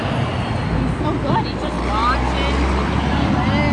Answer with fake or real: real